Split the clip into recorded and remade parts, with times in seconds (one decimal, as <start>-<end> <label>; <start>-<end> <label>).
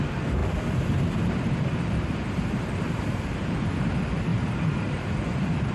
0.0-0.4 remade; 0.4-1.2 recorded; 1.2-5.7 remade